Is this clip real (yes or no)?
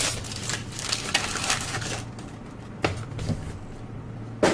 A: no